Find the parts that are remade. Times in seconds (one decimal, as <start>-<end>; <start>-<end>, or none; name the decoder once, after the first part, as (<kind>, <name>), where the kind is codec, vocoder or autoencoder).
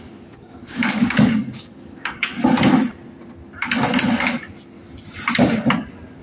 0.0-2.3 (codec, DAC)